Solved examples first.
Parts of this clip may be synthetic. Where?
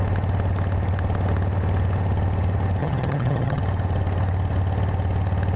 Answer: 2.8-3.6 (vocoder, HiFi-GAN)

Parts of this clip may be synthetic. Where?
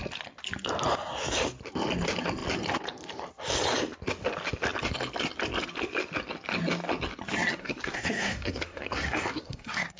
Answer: 7.5-10.0 (codec, SNAC)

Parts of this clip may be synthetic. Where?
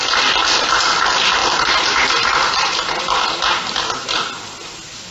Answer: 1.4-3.0 (vocoder, BigVGAN v2)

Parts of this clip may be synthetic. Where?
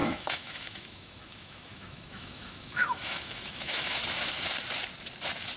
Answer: 0.0-4.0 (autoencoder, DAC-VAE)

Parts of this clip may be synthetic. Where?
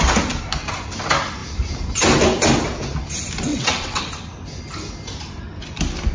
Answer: 3.5-4.0 (vocoder, WaveNeXt)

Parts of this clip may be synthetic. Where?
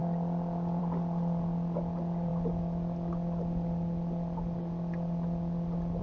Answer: none